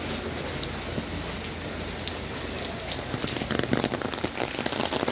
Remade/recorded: recorded